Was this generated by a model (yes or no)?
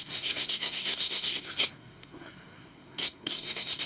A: yes